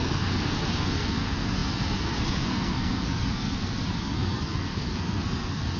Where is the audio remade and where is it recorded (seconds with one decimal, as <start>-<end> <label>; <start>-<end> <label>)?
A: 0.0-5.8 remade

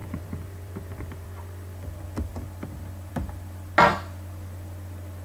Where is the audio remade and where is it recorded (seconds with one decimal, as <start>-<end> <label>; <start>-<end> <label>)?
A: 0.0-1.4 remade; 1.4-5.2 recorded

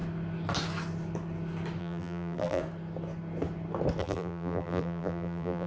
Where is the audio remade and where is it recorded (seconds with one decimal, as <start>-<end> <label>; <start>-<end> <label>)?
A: 0.0-1.8 recorded; 1.8-2.6 remade; 2.6-4.0 recorded; 4.0-5.7 remade

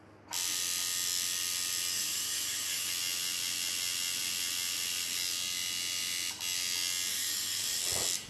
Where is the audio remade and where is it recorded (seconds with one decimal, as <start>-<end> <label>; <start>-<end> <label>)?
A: 0.0-1.9 recorded; 1.9-2.9 remade; 2.9-7.1 recorded; 7.1-7.8 remade; 7.8-8.3 recorded